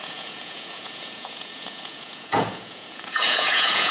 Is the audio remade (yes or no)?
yes